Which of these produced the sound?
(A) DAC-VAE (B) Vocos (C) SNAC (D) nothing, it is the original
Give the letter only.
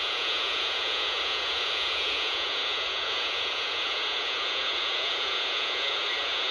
B